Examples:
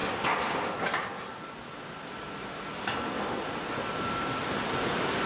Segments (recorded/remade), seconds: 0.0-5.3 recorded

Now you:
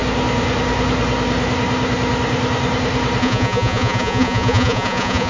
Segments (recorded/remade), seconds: 0.0-3.2 recorded; 3.2-5.3 remade

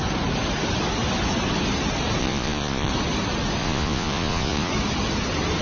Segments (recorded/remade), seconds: 0.0-2.2 recorded; 2.2-2.9 remade; 2.9-3.6 recorded; 3.6-4.7 remade; 4.7-5.6 recorded

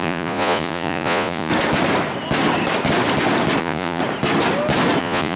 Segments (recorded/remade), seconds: 0.0-1.5 remade; 1.5-3.6 recorded; 3.6-4.0 remade; 4.0-5.0 recorded; 5.0-5.4 remade

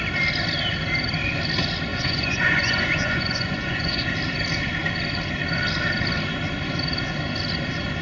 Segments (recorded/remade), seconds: 0.0-1.9 recorded; 1.9-4.1 remade; 4.1-8.0 recorded

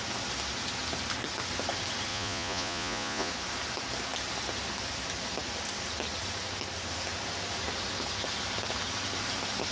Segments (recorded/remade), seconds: 0.0-2.1 recorded; 2.1-3.3 remade; 3.3-9.7 recorded

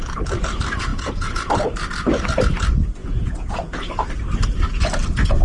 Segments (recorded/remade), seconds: 0.0-0.9 recorded; 0.9-1.5 remade; 1.5-3.0 recorded; 3.0-4.1 remade; 4.1-5.4 recorded